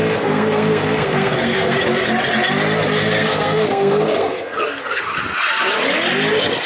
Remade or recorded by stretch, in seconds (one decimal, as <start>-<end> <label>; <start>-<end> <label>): 0.0-1.8 remade; 1.8-3.0 recorded; 3.0-5.0 remade; 5.0-6.7 recorded